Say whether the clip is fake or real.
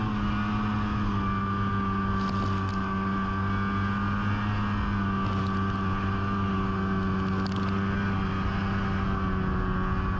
real